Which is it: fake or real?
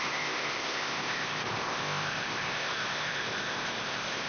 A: fake